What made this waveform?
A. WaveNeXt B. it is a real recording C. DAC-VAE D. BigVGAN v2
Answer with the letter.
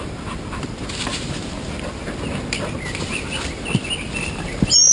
D